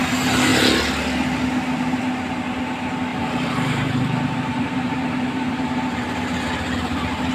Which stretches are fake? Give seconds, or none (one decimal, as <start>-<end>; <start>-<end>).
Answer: 3.1-7.3